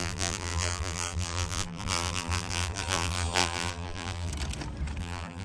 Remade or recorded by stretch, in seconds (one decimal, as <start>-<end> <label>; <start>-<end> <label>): 0.0-4.3 remade; 4.3-5.0 recorded; 5.0-5.4 remade